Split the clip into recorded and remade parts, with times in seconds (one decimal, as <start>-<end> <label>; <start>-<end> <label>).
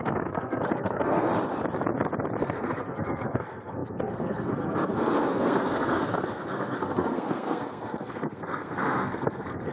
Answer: 0.0-1.3 remade; 1.3-2.4 recorded; 2.4-9.7 remade